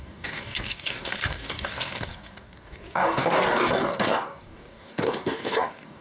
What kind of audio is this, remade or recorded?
remade